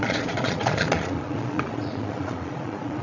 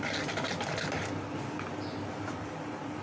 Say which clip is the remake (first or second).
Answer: first